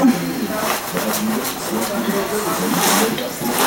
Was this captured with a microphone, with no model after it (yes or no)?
yes